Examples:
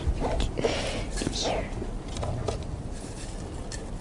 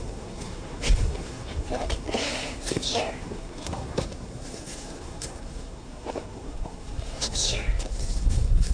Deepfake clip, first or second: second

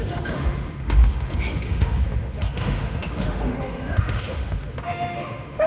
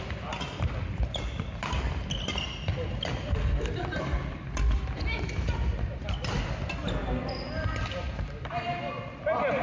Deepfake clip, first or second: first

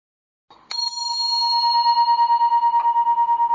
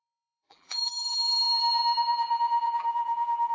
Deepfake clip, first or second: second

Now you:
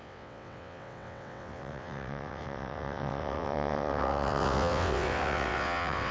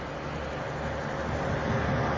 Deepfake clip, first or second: first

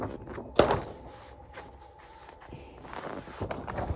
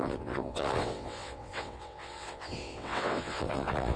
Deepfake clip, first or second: second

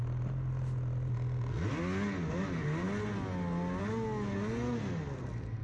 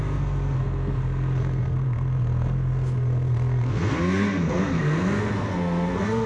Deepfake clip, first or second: second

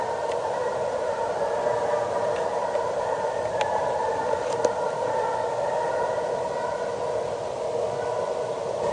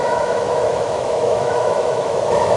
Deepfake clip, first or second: second